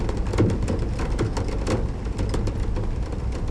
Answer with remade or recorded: recorded